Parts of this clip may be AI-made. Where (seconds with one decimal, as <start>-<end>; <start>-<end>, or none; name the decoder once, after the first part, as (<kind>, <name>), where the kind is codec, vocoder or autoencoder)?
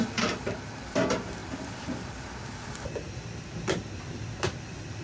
0.0-5.0 (vocoder, BigVGAN v2)